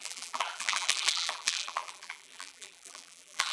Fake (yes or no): yes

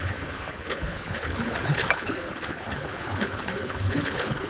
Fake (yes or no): yes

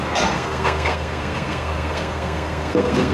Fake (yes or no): yes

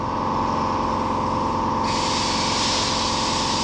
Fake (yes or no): no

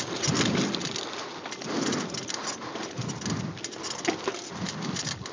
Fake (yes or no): no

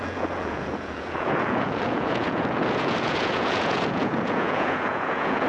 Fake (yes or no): yes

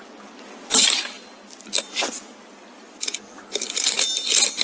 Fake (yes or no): no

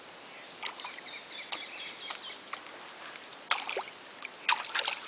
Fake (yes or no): no